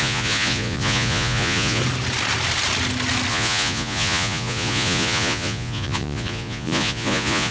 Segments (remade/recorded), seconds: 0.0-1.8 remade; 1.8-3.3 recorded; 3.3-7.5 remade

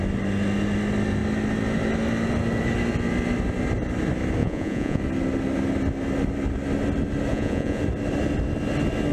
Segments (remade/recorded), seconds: 0.0-4.4 recorded; 4.4-5.0 remade; 5.0-7.3 recorded; 7.3-7.8 remade; 7.8-9.1 recorded